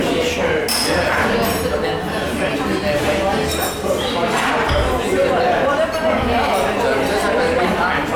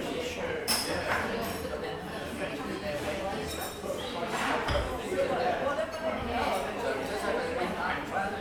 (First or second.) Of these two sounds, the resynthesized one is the second